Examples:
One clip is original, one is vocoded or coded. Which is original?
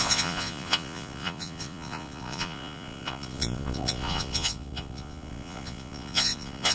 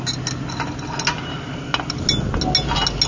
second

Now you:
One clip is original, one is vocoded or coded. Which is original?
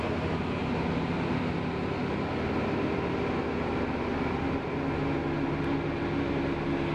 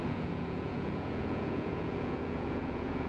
first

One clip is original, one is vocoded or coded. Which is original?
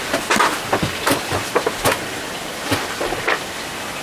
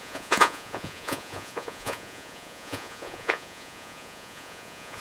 first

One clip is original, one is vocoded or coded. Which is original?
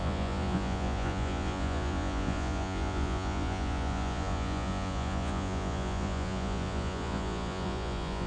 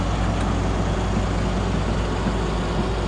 second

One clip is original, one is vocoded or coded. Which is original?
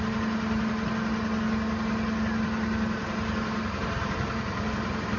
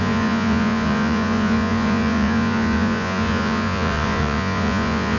first